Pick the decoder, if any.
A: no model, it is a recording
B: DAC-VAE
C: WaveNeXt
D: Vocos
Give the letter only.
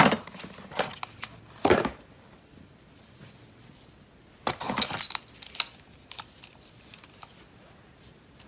A